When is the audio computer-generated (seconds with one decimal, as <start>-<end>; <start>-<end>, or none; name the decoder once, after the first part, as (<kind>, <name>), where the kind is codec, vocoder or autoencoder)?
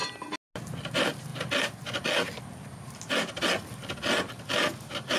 none